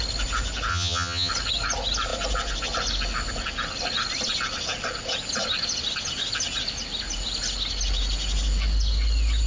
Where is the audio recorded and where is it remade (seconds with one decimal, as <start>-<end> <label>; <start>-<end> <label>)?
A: 0.0-0.7 recorded; 0.7-1.3 remade; 1.3-9.5 recorded

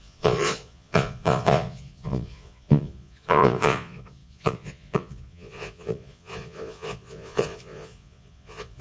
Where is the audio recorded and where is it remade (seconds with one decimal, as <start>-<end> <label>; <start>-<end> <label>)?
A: 0.0-8.8 remade

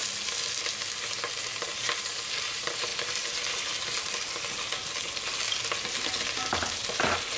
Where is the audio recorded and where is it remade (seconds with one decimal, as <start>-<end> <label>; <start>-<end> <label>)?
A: 0.0-1.4 recorded; 1.4-2.9 remade; 2.9-6.5 recorded; 6.5-7.4 remade

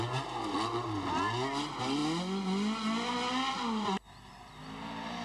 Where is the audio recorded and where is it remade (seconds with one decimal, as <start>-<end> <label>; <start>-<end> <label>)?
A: 0.0-5.2 recorded